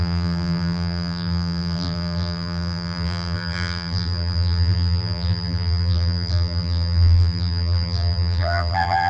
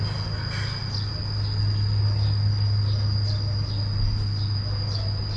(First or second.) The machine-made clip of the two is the first